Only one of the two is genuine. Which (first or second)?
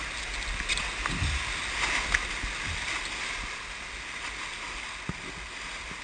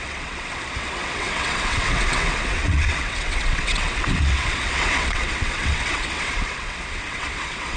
first